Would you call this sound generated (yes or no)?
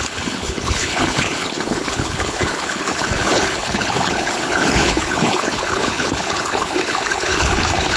yes